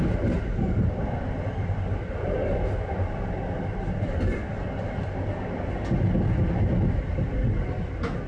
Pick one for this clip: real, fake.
real